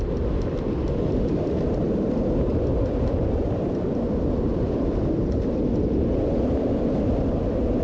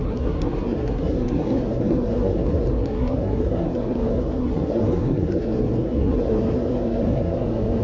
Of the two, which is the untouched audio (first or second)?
first